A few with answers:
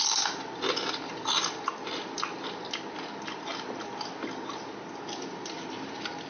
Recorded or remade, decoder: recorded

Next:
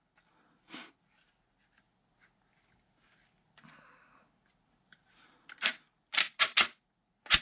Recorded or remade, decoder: recorded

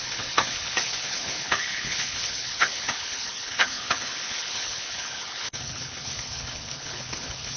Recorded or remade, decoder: remade, codec, HILCodec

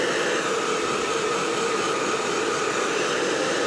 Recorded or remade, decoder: recorded